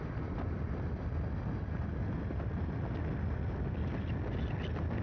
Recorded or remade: recorded